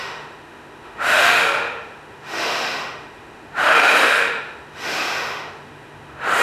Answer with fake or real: fake